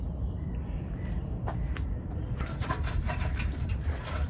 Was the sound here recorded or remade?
remade